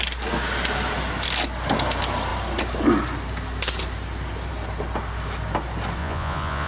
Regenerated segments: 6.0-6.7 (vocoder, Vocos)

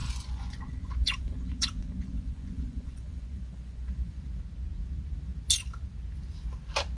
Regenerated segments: 0.0-4.2 (vocoder, Vocos)

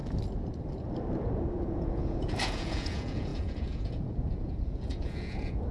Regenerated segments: 1.5-5.7 (vocoder, Vocos)

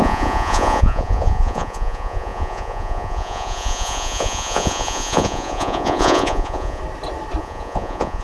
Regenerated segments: 0.0-6.8 (vocoder, Vocos); 7.4-8.2

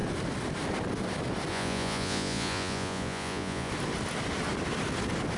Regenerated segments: 1.5-3.7 (vocoder, Vocos)

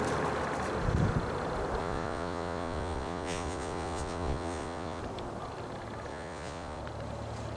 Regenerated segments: 1.8-5.0 (vocoder, Vocos); 6.1-6.8

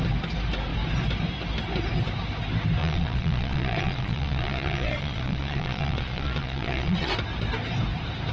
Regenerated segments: 2.8-7.1 (vocoder, Vocos)

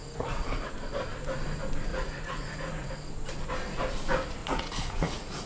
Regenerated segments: 0.0-0.7 (vocoder, Vocos); 1.9-2.9; 4.4-5.5